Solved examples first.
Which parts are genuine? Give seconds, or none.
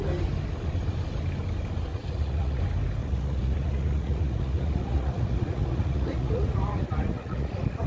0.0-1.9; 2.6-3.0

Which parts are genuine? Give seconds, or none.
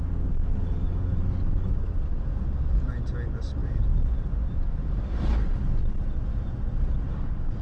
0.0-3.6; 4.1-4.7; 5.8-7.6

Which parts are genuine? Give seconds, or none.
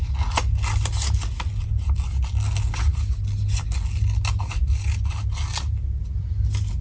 0.0-6.8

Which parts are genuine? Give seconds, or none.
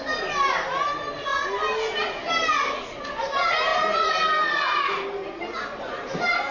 0.0-6.5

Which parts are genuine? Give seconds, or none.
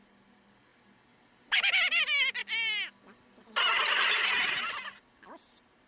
0.0-5.9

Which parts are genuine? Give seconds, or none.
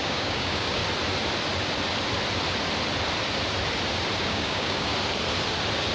0.8-4.2; 4.9-5.9